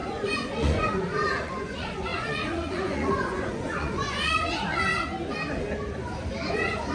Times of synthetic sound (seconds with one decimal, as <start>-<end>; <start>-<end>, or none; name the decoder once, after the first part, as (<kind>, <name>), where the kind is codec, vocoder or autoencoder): 0.0-4.9 (vocoder, Vocos); 6.5-6.9